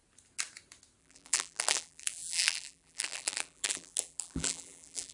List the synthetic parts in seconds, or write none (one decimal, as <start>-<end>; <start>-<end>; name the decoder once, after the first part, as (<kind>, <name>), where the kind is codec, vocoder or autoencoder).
1.0-5.1 (vocoder, BigVGAN v2)